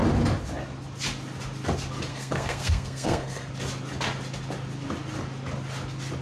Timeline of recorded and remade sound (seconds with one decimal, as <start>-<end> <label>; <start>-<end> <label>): 0.0-2.1 recorded; 2.1-3.5 remade; 3.5-6.2 recorded